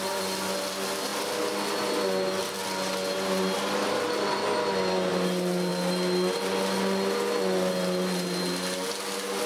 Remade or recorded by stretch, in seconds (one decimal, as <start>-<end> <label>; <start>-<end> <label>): 0.0-9.5 recorded

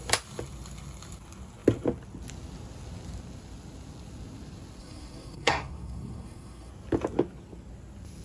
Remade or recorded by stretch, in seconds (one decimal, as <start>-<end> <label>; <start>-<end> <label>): 0.0-4.8 recorded; 4.8-6.7 remade; 6.7-8.2 recorded

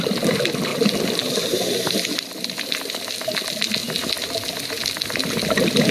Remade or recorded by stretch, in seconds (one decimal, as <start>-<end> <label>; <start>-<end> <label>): 0.0-5.9 recorded